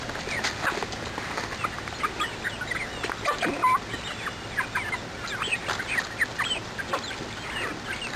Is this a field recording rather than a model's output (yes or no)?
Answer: yes